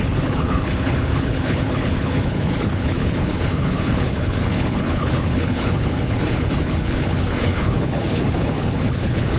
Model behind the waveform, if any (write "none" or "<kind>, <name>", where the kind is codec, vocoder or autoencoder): codec, HILCodec